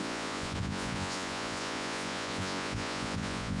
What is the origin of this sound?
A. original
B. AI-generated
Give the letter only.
B